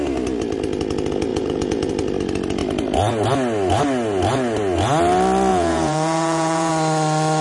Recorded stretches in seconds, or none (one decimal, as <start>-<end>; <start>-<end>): 0.0-1.3; 1.9-5.5; 6.7-7.4